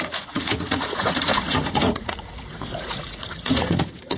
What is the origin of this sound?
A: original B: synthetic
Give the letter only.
B